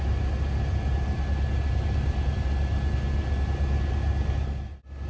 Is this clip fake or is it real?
real